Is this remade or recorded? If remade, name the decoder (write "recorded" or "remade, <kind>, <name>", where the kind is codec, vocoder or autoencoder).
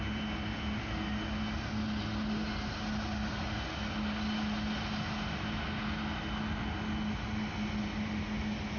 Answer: recorded